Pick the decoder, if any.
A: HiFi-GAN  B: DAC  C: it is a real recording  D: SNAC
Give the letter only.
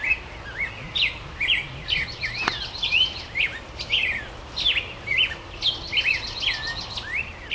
C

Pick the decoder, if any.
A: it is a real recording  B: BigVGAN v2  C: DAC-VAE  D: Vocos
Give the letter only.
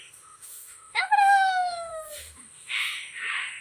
C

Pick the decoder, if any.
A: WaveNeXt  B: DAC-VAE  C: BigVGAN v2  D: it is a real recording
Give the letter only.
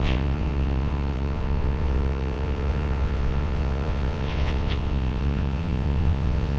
A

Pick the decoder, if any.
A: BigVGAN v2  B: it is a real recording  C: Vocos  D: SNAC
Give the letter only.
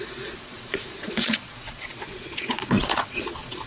C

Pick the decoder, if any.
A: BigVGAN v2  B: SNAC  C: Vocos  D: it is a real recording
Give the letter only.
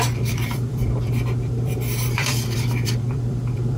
A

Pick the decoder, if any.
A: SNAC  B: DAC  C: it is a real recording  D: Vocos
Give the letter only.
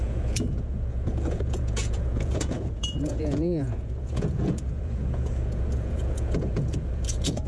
D